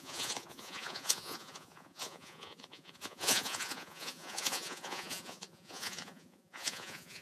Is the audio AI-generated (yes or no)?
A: yes